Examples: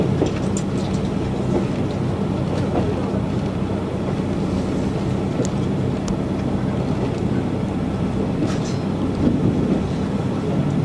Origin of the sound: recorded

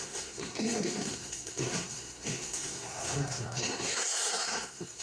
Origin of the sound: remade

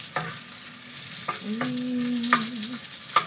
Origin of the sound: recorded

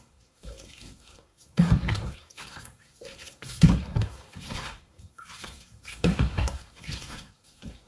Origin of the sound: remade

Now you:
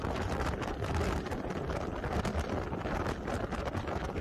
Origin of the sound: recorded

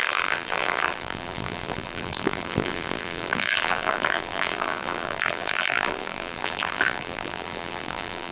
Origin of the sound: remade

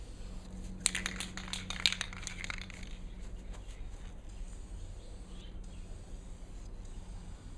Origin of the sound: recorded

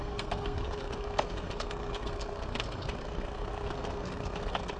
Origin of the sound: remade